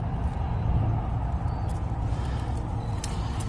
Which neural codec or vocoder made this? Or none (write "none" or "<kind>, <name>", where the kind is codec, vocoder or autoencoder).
none